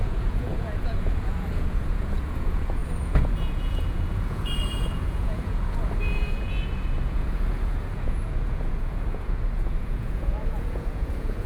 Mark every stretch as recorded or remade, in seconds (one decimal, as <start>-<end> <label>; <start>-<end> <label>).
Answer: 0.0-11.5 remade